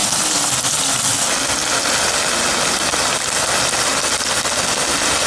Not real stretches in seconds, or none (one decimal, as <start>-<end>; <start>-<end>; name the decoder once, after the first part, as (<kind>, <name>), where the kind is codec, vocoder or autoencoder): none